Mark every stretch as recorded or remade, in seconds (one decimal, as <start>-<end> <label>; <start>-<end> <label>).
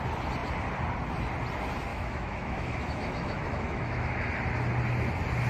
0.0-1.9 recorded; 1.9-4.3 remade; 4.3-5.5 recorded